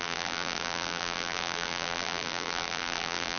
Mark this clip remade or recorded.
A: remade